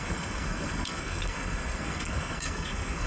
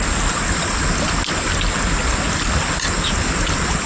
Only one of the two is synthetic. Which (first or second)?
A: first